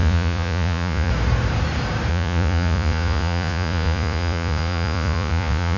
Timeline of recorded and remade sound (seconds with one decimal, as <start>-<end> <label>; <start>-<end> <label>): 0.0-1.1 remade; 1.1-2.1 recorded; 2.1-5.8 remade